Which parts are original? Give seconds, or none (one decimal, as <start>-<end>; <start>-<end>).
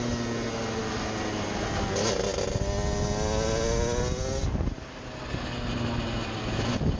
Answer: 0.0-7.0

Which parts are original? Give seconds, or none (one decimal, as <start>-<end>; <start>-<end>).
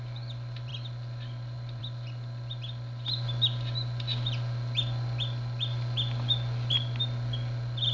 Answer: 0.0-7.9